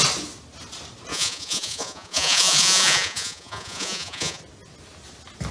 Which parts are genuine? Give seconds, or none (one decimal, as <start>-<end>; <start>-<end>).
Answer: 0.0-1.1; 4.4-5.5